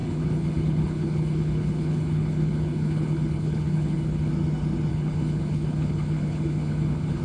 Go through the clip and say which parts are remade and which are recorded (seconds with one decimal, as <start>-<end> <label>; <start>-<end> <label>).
0.0-4.3 remade; 4.3-4.9 recorded; 4.9-7.2 remade